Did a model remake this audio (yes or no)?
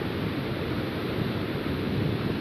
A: no